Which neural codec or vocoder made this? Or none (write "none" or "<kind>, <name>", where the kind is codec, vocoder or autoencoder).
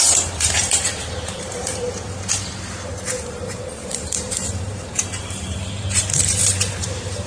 vocoder, BigVGAN v2